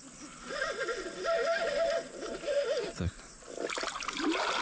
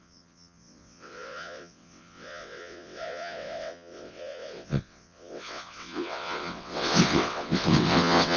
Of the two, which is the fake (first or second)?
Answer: second